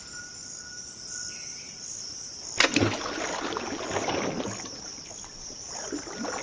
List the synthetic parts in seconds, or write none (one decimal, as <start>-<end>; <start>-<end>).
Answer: 0.4-1.0; 1.5-4.1